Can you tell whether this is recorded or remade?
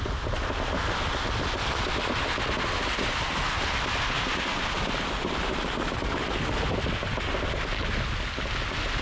recorded